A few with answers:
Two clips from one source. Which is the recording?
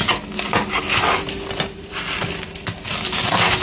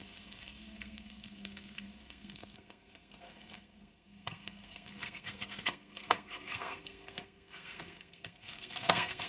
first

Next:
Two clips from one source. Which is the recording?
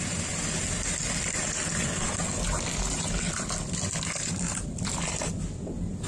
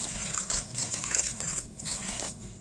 first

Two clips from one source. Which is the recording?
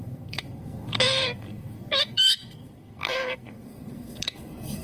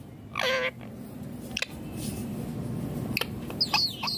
second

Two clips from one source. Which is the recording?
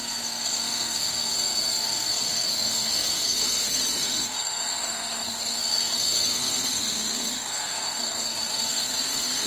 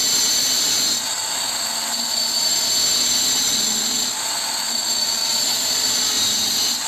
second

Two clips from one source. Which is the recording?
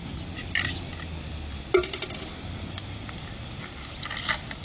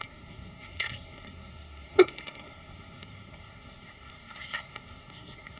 first